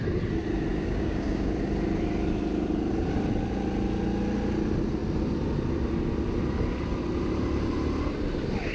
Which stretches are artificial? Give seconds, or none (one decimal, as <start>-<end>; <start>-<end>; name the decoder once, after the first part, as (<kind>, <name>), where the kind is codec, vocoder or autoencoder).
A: 0.7-1.5 (codec, DAC)